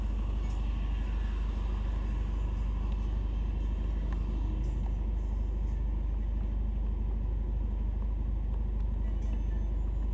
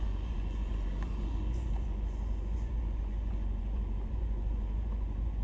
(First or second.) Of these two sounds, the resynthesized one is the second